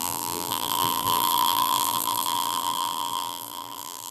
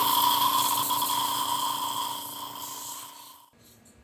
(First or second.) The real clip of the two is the second